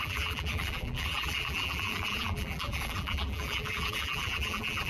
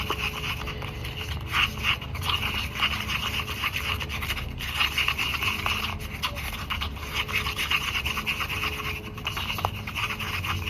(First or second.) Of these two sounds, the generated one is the first